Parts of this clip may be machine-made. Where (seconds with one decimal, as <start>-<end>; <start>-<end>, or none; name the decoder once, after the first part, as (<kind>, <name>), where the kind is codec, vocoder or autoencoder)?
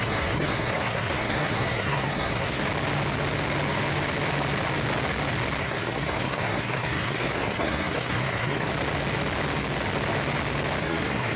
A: 0.0-2.6 (codec, SNAC); 5.6-8.7; 10.8-11.4